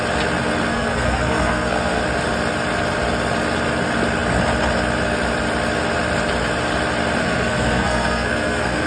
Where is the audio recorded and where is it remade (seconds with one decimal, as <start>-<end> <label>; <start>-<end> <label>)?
0.0-0.7 recorded; 0.7-2.0 remade; 2.0-7.2 recorded; 7.2-8.9 remade